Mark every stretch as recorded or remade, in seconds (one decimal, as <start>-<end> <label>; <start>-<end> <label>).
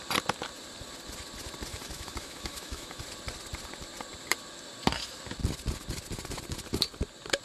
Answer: 0.0-1.7 recorded; 1.7-3.0 remade; 3.0-7.4 recorded